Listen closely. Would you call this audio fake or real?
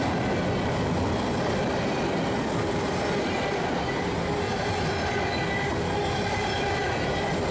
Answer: real